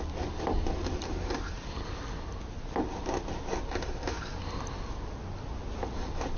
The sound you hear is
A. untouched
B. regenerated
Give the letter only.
A